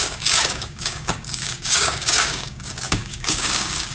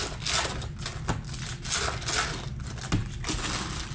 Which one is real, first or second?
second